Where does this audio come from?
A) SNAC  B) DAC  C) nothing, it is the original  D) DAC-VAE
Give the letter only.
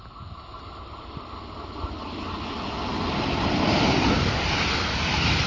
C